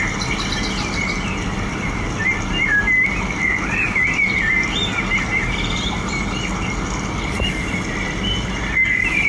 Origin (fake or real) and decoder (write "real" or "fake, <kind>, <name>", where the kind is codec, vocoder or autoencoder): real